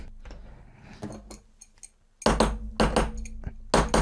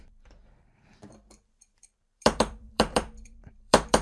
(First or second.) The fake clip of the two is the second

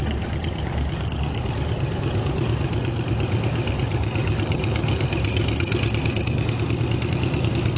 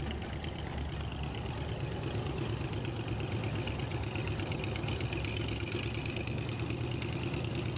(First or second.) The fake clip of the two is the first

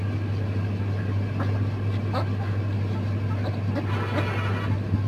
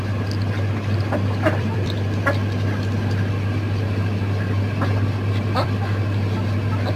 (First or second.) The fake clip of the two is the second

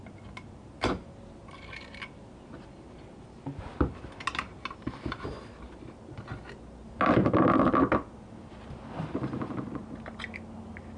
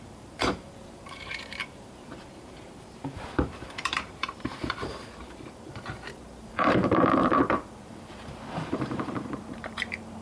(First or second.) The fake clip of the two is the second